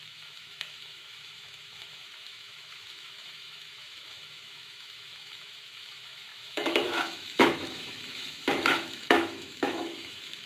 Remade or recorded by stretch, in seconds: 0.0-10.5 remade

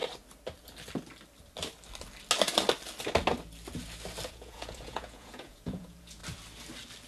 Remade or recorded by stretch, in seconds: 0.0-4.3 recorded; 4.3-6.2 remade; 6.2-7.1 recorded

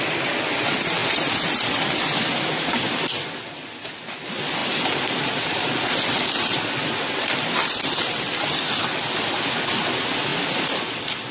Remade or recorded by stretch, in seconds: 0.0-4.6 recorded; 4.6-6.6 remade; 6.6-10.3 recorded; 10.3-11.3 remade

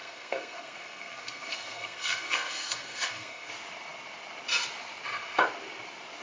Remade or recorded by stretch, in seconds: 0.0-3.5 remade; 3.5-6.2 recorded

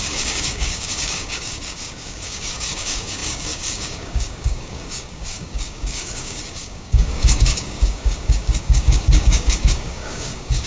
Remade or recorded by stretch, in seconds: 0.0-10.7 remade